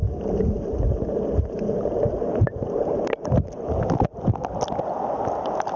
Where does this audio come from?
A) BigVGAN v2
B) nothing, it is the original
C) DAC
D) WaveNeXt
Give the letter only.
B